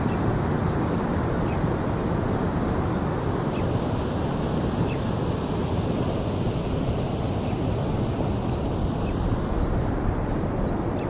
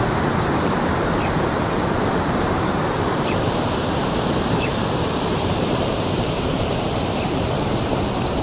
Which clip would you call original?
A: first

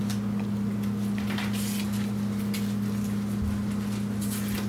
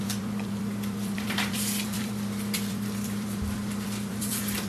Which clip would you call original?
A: first